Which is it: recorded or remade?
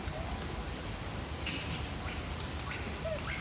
remade